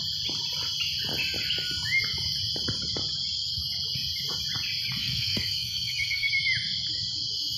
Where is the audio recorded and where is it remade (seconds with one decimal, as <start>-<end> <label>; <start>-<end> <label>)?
0.0-5.0 recorded; 5.0-6.3 remade; 6.3-7.6 recorded